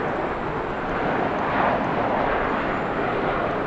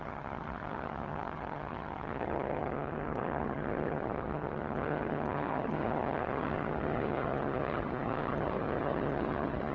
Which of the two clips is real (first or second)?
first